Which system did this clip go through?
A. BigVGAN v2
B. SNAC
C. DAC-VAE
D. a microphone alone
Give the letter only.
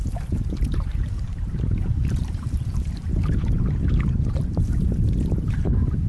A